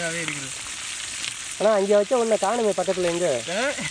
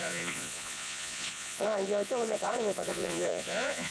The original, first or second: first